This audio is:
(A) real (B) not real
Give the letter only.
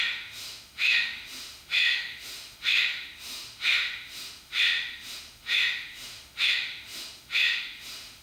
B